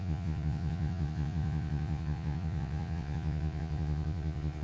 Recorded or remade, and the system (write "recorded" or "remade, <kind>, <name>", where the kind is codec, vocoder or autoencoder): remade, vocoder, Vocos